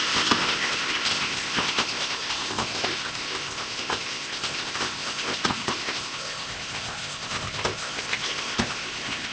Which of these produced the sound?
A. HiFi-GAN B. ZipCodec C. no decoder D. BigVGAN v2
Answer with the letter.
B